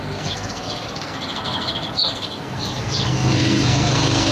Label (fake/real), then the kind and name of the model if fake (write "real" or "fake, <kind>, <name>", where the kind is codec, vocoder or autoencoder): fake, codec, SNAC